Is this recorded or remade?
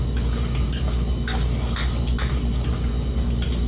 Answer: recorded